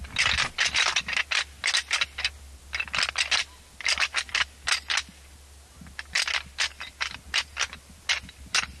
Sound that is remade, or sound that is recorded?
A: recorded